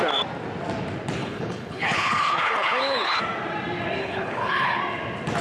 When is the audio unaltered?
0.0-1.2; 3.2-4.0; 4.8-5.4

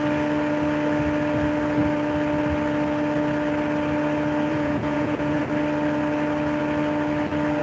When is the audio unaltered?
0.0-4.5; 5.4-7.6

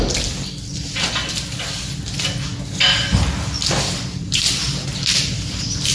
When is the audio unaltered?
2.5-3.7

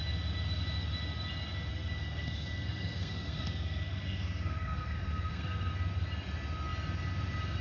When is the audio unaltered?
0.0-1.7; 5.7-7.6

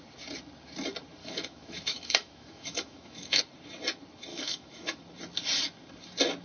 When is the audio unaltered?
0.0-1.2; 3.4-4.3; 5.0-6.4